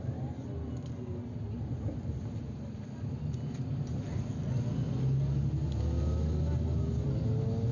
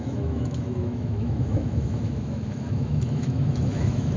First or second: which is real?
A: first